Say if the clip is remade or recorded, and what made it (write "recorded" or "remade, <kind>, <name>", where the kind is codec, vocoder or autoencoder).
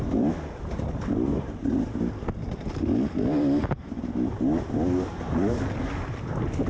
recorded